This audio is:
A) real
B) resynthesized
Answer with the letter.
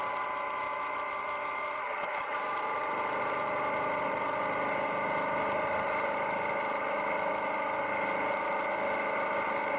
A